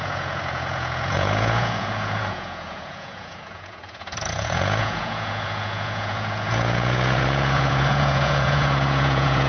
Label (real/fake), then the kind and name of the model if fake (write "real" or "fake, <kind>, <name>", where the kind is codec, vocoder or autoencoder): fake, vocoder, Vocos